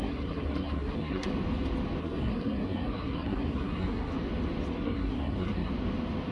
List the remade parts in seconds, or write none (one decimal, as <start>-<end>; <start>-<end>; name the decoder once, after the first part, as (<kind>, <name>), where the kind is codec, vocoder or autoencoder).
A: 0.0-1.3 (codec, SNAC); 2.0-4.1; 4.7-5.7